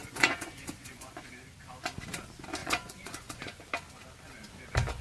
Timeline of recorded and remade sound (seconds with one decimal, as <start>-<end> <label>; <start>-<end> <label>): 0.0-1.3 remade; 1.3-2.6 recorded; 2.6-3.6 remade; 3.6-5.0 recorded